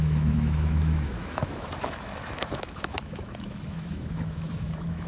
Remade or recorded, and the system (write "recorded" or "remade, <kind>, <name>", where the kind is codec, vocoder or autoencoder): remade, autoencoder, DAC-VAE